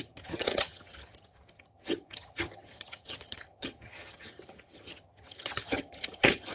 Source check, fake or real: fake